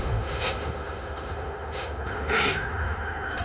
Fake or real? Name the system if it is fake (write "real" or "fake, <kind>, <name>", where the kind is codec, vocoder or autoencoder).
fake, autoencoder, DAC-VAE